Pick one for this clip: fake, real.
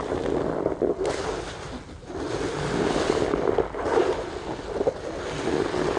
real